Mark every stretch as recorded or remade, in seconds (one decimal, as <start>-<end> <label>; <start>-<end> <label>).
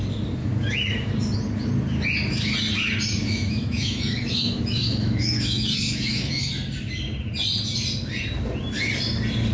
0.0-0.4 recorded; 0.4-1.1 remade; 1.1-3.2 recorded; 3.2-6.5 remade; 6.5-9.5 recorded